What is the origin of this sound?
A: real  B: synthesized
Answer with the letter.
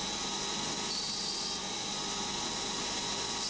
A